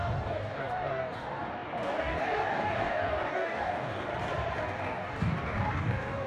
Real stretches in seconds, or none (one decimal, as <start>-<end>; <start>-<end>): 4.1-4.6